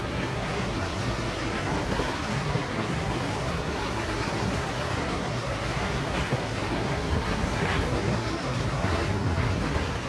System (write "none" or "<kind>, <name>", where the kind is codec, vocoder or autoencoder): codec, SNAC